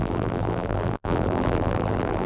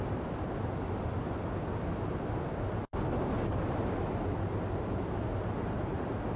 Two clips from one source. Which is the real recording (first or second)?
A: second